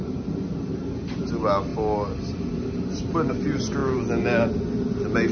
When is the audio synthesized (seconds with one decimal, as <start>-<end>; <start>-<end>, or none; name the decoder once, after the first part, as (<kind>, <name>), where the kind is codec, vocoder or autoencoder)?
none